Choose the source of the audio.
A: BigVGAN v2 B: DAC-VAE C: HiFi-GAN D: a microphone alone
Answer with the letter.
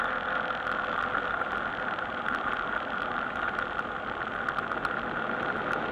A